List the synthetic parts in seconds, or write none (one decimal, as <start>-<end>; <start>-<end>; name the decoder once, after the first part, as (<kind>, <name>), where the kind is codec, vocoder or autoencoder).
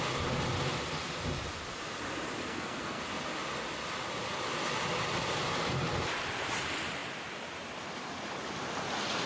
2.4-3.0 (codec, SNAC)